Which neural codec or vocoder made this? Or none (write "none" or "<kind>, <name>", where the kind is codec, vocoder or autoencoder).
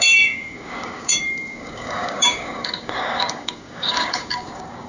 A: codec, DAC